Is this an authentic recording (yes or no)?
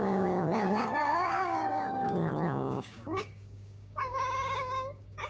no